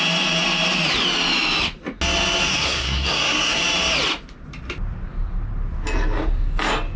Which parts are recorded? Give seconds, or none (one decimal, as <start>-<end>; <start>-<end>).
0.0-2.5; 3.6-7.0